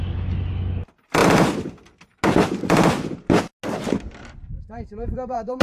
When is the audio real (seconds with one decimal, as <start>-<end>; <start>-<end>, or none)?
0.0-4.2